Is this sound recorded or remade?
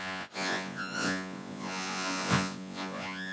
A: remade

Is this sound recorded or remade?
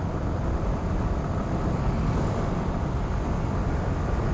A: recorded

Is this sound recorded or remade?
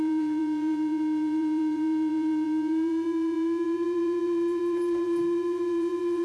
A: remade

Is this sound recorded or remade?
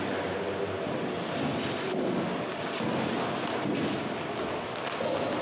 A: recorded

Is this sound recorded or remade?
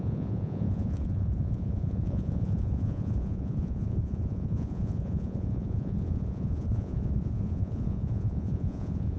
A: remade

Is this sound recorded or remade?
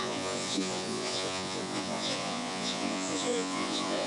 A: remade